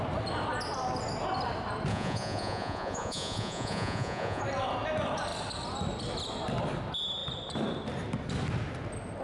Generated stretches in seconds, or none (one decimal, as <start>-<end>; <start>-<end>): 1.9-4.4